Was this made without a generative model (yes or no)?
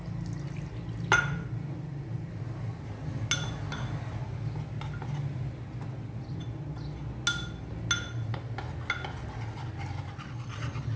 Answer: yes